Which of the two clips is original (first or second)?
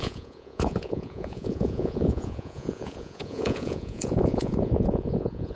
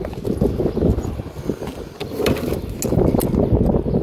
second